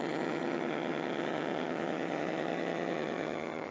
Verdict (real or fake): fake